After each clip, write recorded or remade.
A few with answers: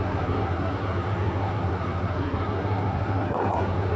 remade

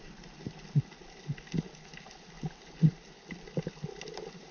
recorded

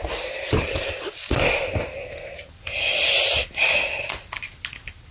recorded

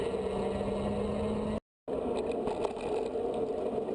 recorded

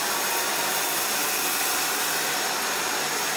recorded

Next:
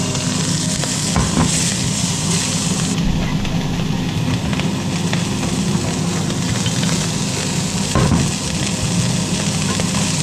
recorded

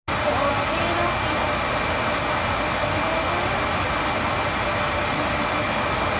recorded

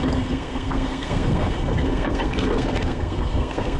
remade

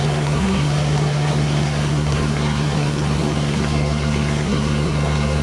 remade